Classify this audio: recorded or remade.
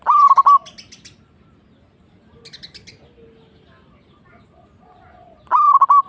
recorded